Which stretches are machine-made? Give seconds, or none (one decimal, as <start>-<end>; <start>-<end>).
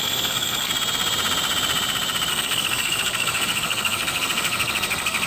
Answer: 0.0-0.7; 2.3-5.3